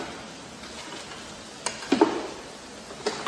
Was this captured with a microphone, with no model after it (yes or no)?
yes